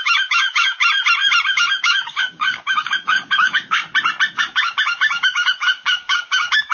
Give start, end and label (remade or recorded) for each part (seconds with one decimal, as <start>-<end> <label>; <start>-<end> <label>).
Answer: 0.0-0.8 remade; 0.8-1.5 recorded; 1.5-3.8 remade; 3.8-4.4 recorded; 4.4-6.7 remade